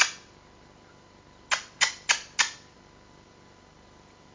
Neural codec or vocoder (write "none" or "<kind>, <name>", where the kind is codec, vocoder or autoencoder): none